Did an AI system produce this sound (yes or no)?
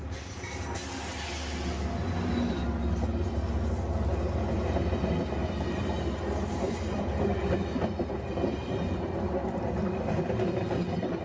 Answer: no